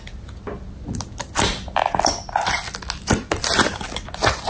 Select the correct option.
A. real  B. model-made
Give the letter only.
A